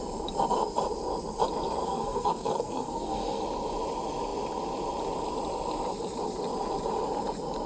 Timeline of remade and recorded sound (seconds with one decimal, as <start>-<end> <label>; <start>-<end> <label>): 0.0-1.8 recorded; 1.8-3.4 remade; 3.4-7.7 recorded